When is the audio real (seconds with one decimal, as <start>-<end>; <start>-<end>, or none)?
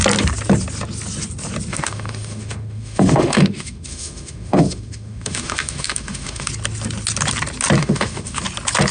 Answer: 0.0-1.7; 6.5-7.8; 8.4-8.9